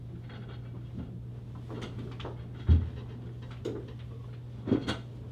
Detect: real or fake real